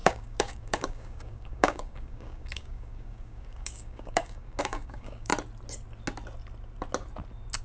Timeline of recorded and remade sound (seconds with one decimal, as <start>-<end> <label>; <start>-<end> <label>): 0.0-5.3 remade; 5.3-7.6 recorded